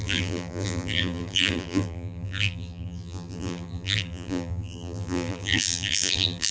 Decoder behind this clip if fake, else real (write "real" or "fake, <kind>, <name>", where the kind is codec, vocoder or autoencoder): fake, vocoder, BigVGAN v2